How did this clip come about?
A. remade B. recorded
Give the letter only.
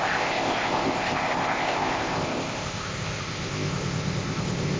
A